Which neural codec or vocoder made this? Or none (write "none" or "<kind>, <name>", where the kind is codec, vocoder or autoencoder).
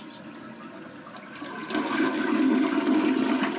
none